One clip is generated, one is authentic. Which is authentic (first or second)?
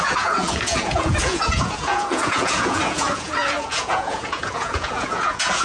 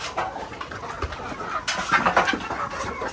second